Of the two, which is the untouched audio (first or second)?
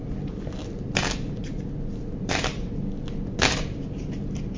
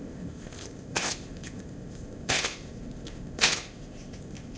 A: first